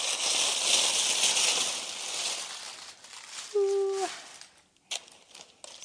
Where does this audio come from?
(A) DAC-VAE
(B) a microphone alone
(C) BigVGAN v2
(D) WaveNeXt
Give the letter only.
B